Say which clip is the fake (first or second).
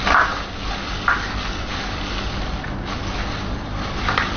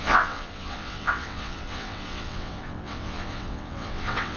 second